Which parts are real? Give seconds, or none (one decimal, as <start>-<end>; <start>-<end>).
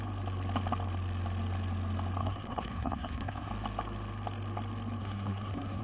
0.0-2.2; 3.5-5.0